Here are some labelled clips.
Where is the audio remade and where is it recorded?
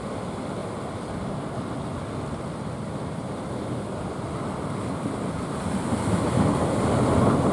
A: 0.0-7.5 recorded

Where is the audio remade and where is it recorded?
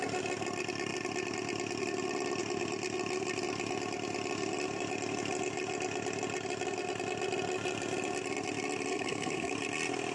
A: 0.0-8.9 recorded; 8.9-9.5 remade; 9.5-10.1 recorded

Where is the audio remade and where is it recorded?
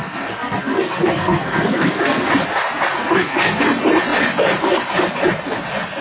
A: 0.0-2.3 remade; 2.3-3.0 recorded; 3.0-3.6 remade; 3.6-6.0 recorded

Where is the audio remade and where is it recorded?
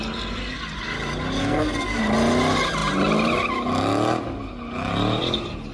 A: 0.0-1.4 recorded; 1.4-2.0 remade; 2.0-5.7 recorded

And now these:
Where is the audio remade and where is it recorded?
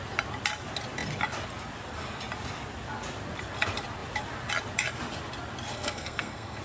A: 0.0-5.7 recorded; 5.7-6.6 remade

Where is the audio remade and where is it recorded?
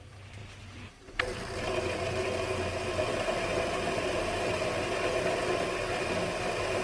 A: 0.0-6.8 recorded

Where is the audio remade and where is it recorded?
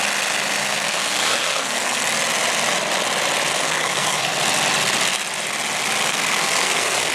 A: 0.0-0.6 recorded; 0.6-2.0 remade; 2.0-3.5 recorded; 3.5-4.3 remade; 4.3-6.1 recorded; 6.1-7.1 remade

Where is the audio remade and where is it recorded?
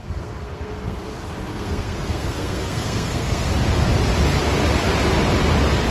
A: 0.0-1.0 remade; 1.0-1.5 recorded; 1.5-3.5 remade; 3.5-5.9 recorded